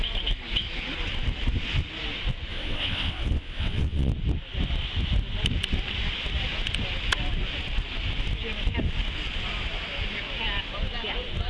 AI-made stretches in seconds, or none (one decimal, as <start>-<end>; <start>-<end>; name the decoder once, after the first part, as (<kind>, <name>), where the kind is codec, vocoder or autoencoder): 2.5-4.1 (vocoder, WaveNeXt)